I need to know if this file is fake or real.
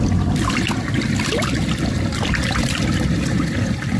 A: fake